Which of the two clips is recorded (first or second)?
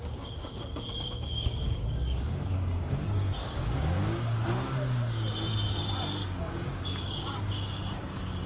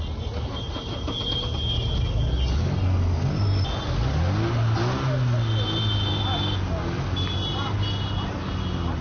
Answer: second